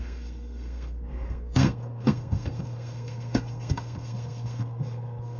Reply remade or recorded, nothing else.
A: remade